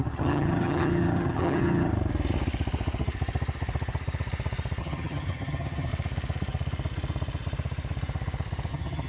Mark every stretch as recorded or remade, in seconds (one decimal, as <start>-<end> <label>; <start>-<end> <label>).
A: 0.0-1.9 remade; 1.9-4.8 recorded; 4.8-5.9 remade; 5.9-8.7 recorded; 8.7-9.1 remade